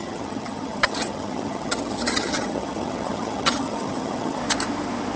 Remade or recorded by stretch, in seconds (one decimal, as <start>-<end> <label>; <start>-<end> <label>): 0.0-4.4 remade; 4.4-5.2 recorded